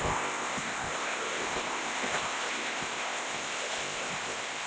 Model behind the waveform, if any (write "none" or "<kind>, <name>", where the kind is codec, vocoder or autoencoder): codec, ZipCodec